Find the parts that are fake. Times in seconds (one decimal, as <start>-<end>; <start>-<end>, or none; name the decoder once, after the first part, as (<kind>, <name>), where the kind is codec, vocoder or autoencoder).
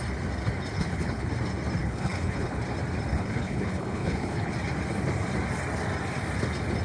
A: 0.7-1.3 (codec, HILCodec); 1.8-2.6; 3.1-4.5